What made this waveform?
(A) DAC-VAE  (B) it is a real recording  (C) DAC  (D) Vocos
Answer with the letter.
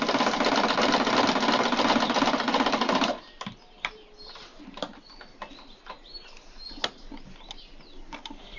B